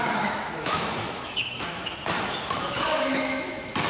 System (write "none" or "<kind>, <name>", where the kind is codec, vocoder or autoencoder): autoencoder, DAC-VAE